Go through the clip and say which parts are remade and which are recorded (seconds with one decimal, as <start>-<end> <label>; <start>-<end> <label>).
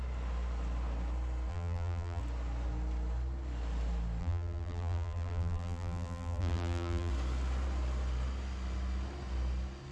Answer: 0.0-1.5 recorded; 1.5-2.2 remade; 2.2-4.2 recorded; 4.2-7.1 remade; 7.1-9.9 recorded